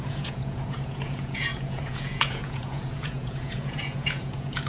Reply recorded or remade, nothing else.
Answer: remade